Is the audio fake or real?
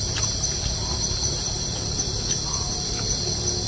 real